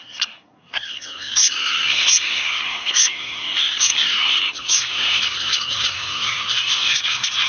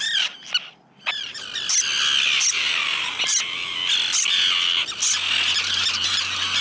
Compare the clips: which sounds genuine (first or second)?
second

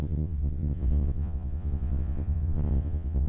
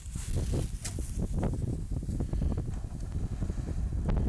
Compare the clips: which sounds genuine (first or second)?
second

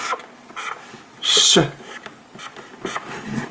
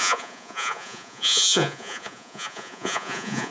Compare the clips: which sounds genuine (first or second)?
first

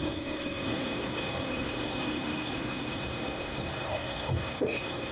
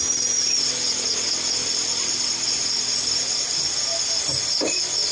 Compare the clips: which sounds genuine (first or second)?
second